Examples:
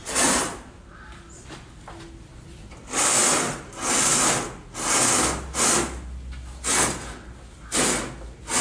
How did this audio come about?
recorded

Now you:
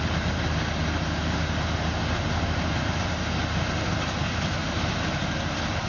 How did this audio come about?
recorded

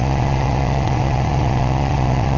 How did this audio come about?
remade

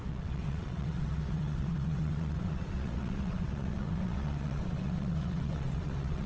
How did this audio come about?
remade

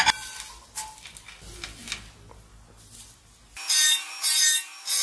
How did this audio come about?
recorded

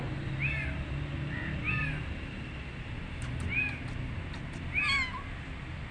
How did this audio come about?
recorded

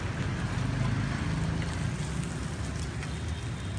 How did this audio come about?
recorded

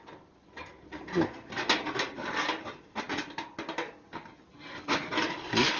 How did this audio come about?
recorded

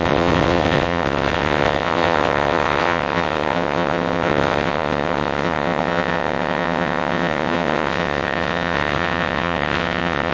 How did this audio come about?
remade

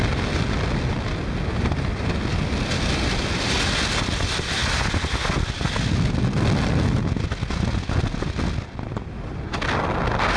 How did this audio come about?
recorded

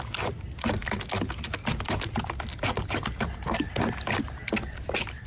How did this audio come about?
recorded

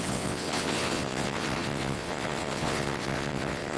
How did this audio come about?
remade